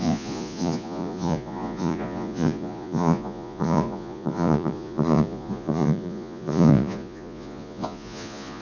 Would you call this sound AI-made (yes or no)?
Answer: yes